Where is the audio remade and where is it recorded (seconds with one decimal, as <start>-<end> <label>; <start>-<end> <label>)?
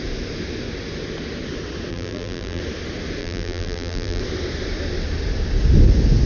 0.0-1.9 recorded; 1.9-2.6 remade; 2.6-3.2 recorded; 3.2-4.2 remade; 4.2-6.3 recorded